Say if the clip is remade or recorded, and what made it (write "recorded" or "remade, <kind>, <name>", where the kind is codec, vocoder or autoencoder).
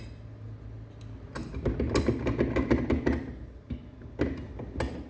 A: recorded